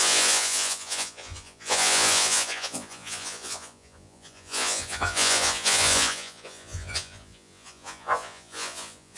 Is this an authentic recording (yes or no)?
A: no